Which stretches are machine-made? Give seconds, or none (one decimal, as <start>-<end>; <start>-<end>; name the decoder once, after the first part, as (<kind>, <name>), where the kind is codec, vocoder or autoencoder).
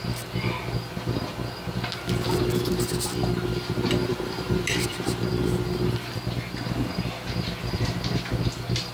4.1-5.3 (vocoder, BigVGAN v2)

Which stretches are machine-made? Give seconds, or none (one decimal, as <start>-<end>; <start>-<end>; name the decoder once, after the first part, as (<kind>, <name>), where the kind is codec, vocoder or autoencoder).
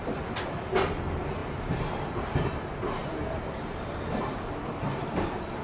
1.4-2.1 (vocoder, BigVGAN v2)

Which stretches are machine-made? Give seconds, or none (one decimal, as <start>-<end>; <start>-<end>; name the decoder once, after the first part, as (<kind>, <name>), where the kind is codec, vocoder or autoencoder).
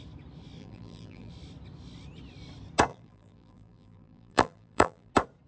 0.6-1.3 (vocoder, BigVGAN v2); 2.9-5.1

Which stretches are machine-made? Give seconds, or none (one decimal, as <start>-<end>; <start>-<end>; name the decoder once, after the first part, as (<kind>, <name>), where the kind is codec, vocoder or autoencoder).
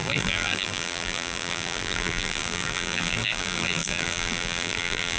0.0-5.2 (vocoder, BigVGAN v2)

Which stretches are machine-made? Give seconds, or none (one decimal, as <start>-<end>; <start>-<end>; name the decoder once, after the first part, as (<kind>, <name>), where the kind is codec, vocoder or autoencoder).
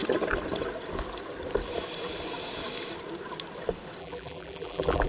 4.0-5.1 (vocoder, BigVGAN v2)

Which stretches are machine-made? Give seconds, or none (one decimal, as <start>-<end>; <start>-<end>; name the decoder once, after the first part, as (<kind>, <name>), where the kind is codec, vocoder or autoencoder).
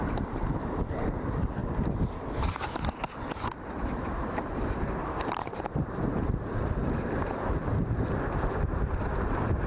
0.0-1.6 (vocoder, BigVGAN v2); 3.6-9.7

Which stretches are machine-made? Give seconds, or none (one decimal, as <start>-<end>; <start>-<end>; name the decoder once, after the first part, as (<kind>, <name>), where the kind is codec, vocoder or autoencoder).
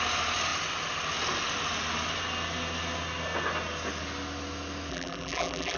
4.9-5.8 (vocoder, BigVGAN v2)